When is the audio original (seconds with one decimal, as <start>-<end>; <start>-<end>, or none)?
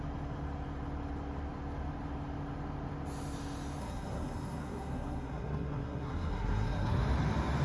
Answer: 0.0-3.8; 7.0-7.6